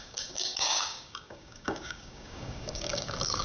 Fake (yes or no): yes